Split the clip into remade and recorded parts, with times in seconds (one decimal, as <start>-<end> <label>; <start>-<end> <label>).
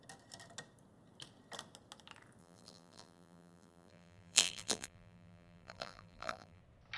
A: 0.0-2.4 recorded; 2.4-6.6 remade; 6.6-7.0 recorded